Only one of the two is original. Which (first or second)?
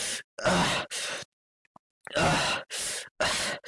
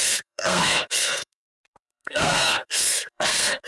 first